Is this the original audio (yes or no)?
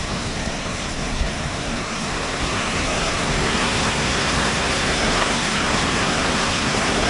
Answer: no